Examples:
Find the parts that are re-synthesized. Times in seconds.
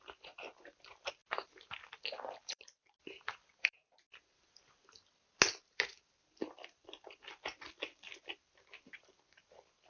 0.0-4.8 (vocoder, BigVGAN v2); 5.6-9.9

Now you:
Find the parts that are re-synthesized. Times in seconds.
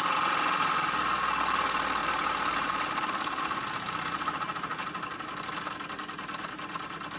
2.0-5.4 (vocoder, BigVGAN v2)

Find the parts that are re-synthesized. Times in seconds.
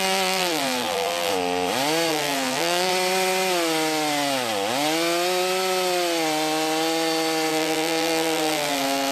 0.0-1.3 (vocoder, BigVGAN v2); 2.1-2.9; 7.5-9.1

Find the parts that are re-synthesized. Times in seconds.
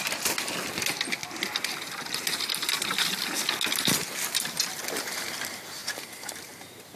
none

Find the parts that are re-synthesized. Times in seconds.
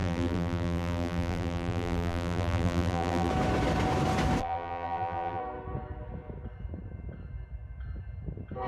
0.0-3.3 (vocoder, BigVGAN v2); 4.4-5.4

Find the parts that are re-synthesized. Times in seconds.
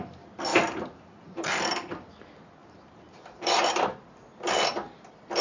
0.5-2.1 (vocoder, BigVGAN v2); 2.6-4.2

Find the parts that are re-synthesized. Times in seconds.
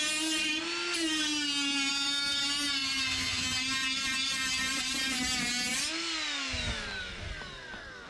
1.9-2.4 (vocoder, BigVGAN v2); 2.8-5.2